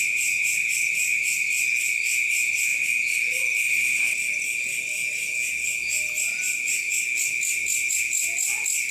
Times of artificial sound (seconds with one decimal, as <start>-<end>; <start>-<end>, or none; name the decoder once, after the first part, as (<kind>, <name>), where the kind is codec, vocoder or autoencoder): none